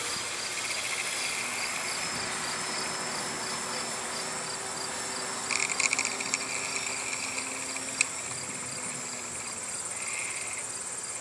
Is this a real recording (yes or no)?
yes